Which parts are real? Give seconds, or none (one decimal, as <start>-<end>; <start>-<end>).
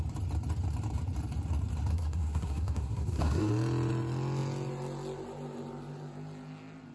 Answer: 0.0-1.9; 3.5-6.9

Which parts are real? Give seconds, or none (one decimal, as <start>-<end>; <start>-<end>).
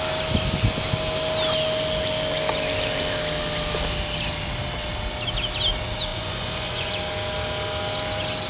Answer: 0.0-6.1; 6.9-8.5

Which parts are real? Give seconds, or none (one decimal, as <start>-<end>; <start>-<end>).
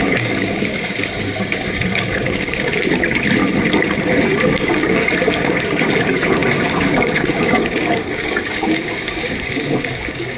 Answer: 3.4-4.0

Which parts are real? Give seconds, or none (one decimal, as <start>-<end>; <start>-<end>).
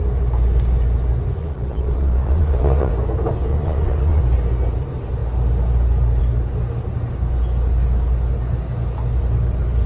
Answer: 0.0-1.4; 2.9-3.5; 4.2-9.9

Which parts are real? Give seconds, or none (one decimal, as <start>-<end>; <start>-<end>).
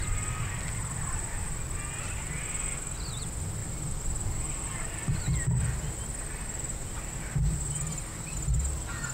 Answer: 0.0-3.6; 5.9-6.8; 7.8-9.1